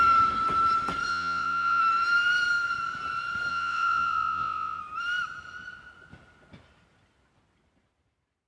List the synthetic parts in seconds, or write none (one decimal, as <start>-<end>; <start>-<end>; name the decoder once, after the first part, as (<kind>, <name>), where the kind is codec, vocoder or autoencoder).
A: 1.1-1.8 (vocoder, WaveNeXt); 3.5-4.8

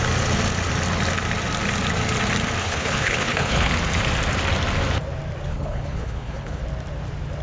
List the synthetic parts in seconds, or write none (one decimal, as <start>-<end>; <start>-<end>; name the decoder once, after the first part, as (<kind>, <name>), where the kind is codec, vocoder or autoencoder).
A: 2.6-3.7 (codec, HILCodec); 5.5-6.6

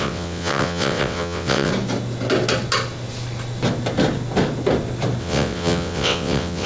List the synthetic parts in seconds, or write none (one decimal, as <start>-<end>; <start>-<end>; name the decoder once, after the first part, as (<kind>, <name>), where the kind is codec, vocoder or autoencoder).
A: 0.0-1.7 (vocoder, WaveNeXt); 5.2-6.7

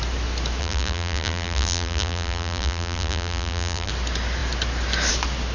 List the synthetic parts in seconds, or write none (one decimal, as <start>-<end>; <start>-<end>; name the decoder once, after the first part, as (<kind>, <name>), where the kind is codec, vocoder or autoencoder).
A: 0.6-3.9 (vocoder, BigVGAN v2)